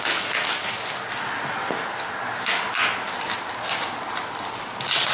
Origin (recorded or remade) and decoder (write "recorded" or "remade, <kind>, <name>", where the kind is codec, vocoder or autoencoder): recorded